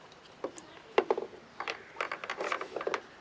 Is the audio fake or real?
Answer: real